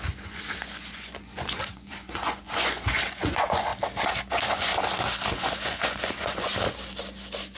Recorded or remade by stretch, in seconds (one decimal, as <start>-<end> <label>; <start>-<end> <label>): 0.0-3.7 remade; 3.7-4.3 recorded; 4.3-4.7 remade; 4.7-5.3 recorded; 5.3-6.5 remade; 6.5-7.6 recorded